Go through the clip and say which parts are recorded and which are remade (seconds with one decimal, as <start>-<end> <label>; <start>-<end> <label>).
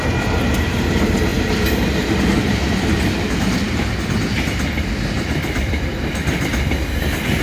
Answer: 0.0-7.4 recorded